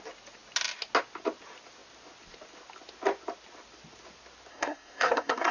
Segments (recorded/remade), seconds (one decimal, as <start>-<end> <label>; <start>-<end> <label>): 0.0-4.5 recorded; 4.5-5.5 remade